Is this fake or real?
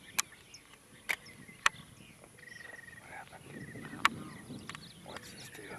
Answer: real